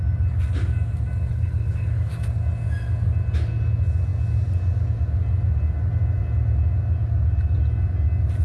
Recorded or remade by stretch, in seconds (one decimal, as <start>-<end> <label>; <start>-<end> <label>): 0.0-1.3 recorded; 1.3-2.1 remade; 2.1-8.4 recorded